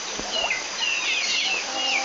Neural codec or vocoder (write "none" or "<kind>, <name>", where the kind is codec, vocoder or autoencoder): none